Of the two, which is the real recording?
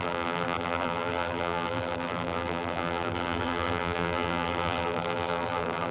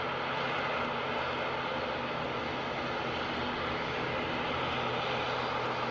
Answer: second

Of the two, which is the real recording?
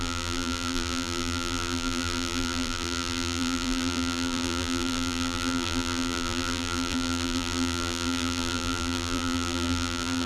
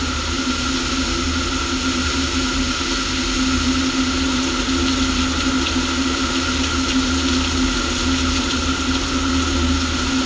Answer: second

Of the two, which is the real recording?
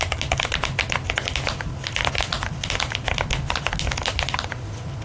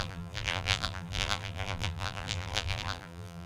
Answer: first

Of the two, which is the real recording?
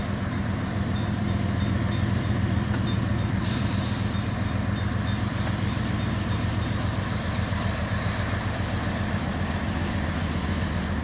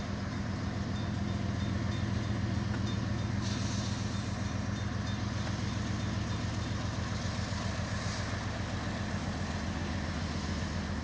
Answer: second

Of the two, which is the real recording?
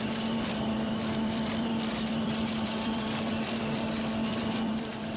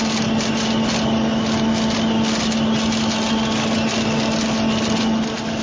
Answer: second